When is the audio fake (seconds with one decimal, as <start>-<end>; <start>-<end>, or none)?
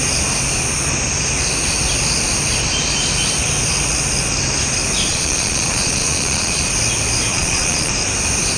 5.1-6.7; 7.3-7.9